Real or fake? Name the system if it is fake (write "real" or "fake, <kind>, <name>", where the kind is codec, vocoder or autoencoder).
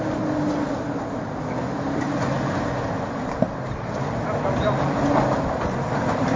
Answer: real